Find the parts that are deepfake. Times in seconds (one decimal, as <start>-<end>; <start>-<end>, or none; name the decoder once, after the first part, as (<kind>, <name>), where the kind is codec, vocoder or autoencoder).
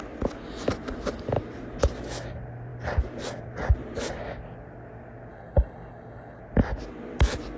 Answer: 5.3-6.4 (codec, HILCodec)